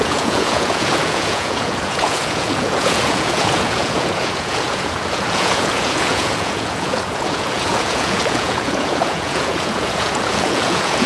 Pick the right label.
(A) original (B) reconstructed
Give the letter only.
B